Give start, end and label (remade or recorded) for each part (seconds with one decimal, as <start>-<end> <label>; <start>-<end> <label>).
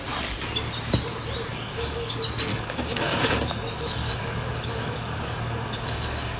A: 0.0-1.5 recorded; 1.5-2.1 remade; 2.1-2.5 recorded; 2.5-6.4 remade